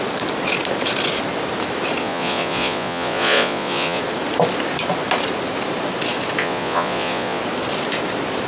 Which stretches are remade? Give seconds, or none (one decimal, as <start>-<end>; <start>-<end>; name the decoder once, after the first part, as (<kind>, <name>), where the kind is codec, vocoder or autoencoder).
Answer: 2.0-4.0 (vocoder, Vocos); 6.4-7.4

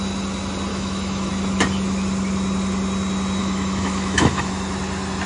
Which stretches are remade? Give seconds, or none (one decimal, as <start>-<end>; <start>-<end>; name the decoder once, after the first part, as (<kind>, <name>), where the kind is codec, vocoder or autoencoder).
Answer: 0.7-1.3 (autoencoder, DAC-VAE); 3.4-4.5

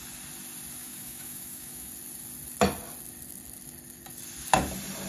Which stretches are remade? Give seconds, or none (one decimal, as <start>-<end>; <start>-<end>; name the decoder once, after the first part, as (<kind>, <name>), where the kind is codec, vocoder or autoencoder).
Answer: 0.8-1.9 (autoencoder, DAC-VAE)

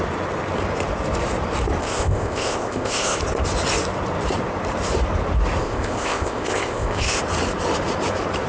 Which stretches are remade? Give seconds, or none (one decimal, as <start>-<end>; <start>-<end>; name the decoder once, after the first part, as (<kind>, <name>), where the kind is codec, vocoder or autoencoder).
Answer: 1.8-3.2 (codec, ZipCodec); 5.6-7.2